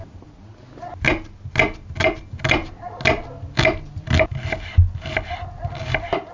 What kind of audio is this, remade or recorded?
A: recorded